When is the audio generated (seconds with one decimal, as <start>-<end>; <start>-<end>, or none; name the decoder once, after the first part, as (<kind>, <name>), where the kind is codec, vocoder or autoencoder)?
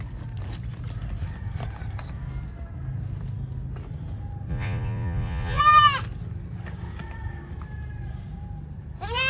4.5-5.6 (vocoder, Vocos)